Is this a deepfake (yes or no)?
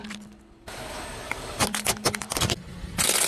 no